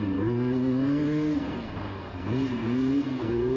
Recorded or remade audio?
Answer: remade